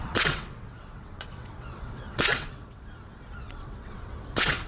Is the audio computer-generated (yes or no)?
yes